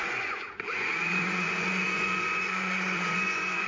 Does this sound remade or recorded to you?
remade